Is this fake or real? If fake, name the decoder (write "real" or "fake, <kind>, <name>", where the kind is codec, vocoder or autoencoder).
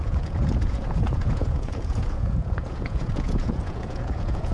fake, vocoder, Vocos